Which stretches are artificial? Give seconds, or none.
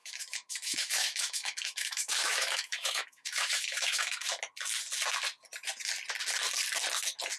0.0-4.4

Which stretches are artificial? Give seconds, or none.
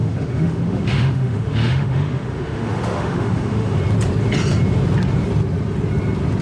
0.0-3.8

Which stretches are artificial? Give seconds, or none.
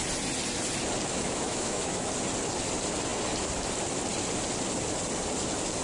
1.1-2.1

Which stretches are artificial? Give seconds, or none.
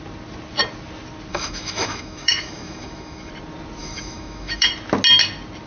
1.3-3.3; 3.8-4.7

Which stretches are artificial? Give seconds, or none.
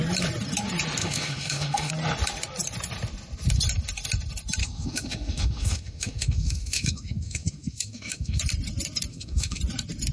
1.0-1.9; 4.6-8.4; 9.1-9.6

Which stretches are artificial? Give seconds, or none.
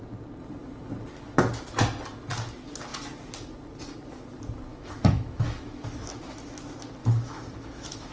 4.7-6.0; 7.0-8.1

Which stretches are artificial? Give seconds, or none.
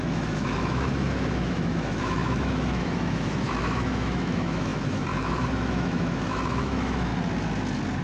0.0-7.1